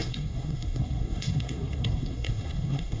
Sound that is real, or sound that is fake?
fake